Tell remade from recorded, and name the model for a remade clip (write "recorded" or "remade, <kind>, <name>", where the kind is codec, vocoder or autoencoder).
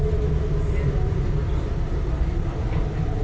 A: recorded